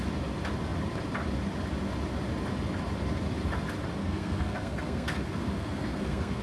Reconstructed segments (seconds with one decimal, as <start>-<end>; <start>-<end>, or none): 4.0-6.4